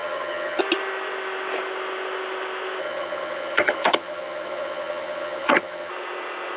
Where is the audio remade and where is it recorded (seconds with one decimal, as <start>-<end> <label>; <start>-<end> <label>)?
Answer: 0.0-0.6 remade; 0.6-2.8 recorded; 2.8-5.9 remade; 5.9-6.6 recorded